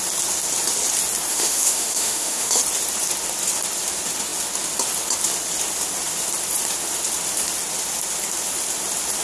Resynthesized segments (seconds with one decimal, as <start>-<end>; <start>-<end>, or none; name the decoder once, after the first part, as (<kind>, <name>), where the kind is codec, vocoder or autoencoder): 1.3-2.6 (autoencoder, DAC-VAE)